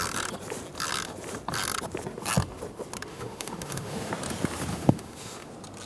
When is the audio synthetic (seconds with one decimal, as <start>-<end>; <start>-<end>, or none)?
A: 3.1-4.1; 4.7-5.5